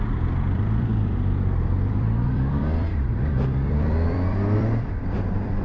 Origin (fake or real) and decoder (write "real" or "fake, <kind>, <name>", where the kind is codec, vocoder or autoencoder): fake, vocoder, BigVGAN v2